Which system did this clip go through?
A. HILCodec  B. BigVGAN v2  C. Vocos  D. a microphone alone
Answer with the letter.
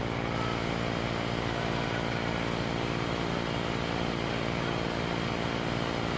D